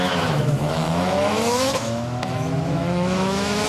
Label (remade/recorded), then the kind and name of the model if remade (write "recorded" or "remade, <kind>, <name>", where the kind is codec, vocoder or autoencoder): remade, autoencoder, DAC-VAE